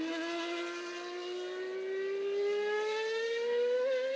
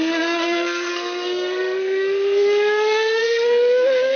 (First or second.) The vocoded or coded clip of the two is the second